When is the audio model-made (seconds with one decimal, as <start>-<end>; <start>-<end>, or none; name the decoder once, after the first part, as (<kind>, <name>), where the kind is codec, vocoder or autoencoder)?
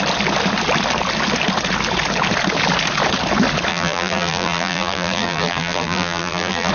3.7-6.7 (vocoder, BigVGAN v2)